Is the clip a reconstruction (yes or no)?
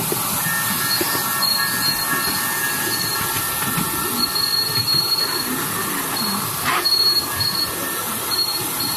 no